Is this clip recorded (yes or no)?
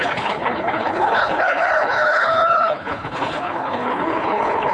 no